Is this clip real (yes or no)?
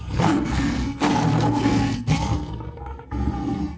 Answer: no